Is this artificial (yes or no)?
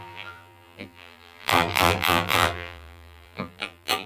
yes